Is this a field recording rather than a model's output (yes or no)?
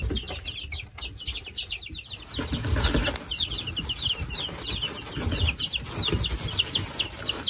yes